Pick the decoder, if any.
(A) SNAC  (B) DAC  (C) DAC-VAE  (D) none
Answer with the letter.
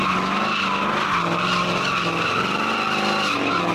D